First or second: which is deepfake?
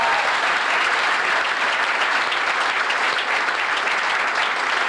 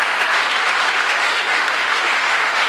second